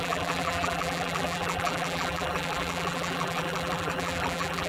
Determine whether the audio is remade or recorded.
remade